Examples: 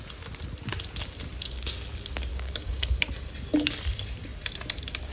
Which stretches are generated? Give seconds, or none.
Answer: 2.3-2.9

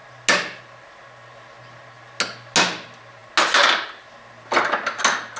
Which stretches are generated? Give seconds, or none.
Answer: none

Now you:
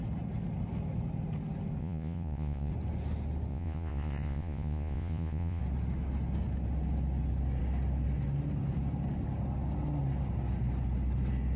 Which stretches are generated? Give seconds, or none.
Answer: 1.8-2.7; 3.5-5.6